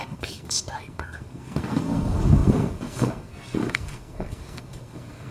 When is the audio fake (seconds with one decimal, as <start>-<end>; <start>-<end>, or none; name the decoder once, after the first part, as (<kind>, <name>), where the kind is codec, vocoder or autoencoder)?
0.0-5.3 (codec, SNAC)